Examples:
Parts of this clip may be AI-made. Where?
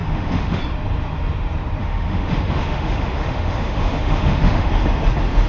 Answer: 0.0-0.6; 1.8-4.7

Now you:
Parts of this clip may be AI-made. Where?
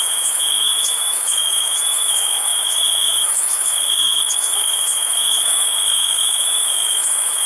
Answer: 0.0-7.5